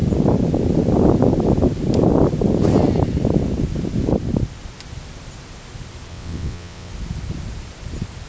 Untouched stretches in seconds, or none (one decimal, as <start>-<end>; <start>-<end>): 0.0-6.1; 6.9-8.3